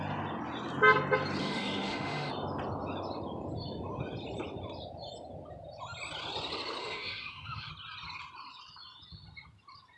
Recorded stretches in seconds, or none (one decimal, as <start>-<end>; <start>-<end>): 0.0-1.4; 2.3-6.8; 7.7-10.0